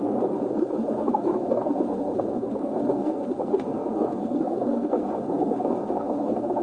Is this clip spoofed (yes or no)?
yes